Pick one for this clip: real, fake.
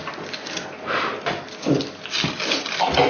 real